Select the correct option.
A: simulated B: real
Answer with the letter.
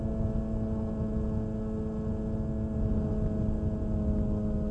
B